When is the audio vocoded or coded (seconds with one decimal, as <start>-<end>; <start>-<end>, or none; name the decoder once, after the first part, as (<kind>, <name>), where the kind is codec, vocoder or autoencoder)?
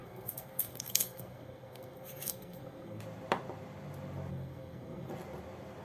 0.0-3.0 (codec, SNAC); 4.3-5.1